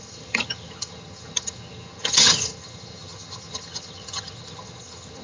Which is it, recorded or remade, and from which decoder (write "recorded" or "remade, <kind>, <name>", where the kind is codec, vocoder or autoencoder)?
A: remade, vocoder, HiFi-GAN